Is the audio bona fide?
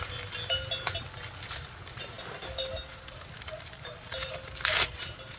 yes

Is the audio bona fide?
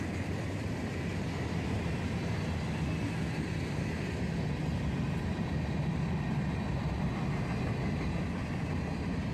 yes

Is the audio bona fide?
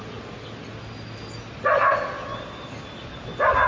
yes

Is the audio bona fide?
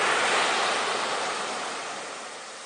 yes